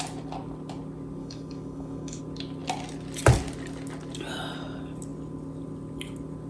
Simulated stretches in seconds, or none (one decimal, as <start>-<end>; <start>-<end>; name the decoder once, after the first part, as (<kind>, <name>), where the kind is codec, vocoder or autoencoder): 1.2-2.2 (codec, DAC)